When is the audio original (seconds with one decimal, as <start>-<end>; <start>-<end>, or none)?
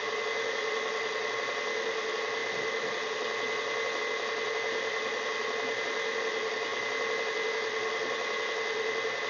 0.0-9.3